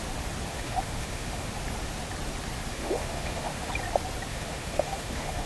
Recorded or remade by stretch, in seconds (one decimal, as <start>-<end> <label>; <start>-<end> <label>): 0.0-0.5 recorded; 0.5-1.5 remade; 1.5-2.7 recorded; 2.7-3.7 remade; 3.7-4.3 recorded; 4.3-5.5 remade